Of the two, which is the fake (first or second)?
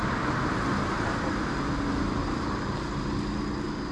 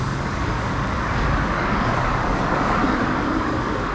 second